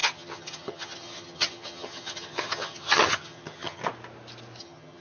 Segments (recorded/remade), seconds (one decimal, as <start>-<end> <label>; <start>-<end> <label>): 0.0-3.8 remade; 3.8-4.6 recorded; 4.6-5.0 remade